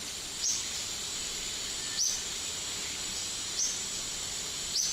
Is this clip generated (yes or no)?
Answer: no